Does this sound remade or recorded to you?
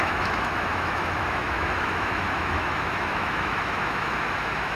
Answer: remade